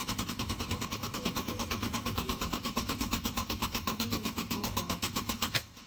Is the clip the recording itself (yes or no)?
no